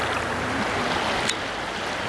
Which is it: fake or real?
real